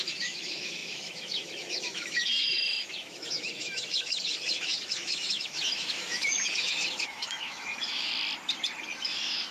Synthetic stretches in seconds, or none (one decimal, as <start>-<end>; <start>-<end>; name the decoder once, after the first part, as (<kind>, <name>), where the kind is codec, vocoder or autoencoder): 0.0-8.1 (autoencoder, DAC-VAE); 9.0-9.5